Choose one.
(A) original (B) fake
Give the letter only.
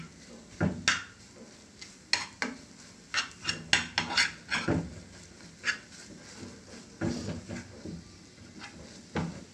A